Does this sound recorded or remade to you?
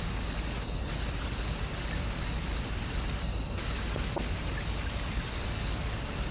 recorded